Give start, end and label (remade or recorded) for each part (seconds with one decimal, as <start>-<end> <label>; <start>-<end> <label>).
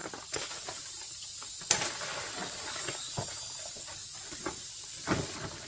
0.0-1.5 remade; 1.5-4.1 recorded; 4.1-4.7 remade; 4.7-5.7 recorded